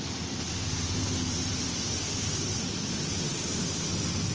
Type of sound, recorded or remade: recorded